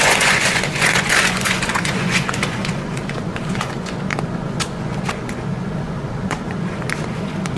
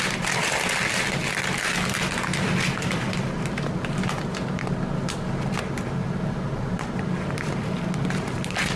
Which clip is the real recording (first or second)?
second